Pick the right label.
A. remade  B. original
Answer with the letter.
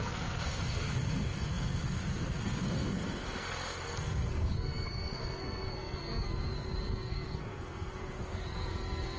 A